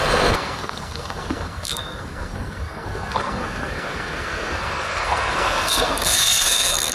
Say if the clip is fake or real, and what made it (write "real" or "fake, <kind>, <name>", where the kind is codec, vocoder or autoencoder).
fake, codec, SNAC